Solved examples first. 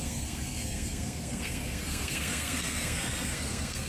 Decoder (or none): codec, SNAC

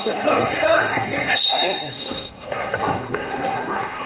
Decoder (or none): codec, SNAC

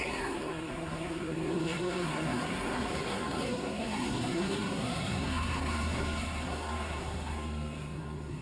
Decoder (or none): codec, SNAC